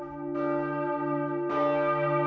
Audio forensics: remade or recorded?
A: recorded